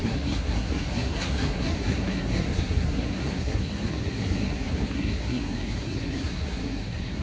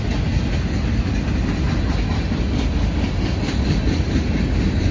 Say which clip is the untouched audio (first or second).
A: second